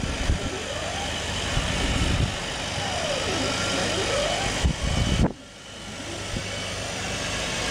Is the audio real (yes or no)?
no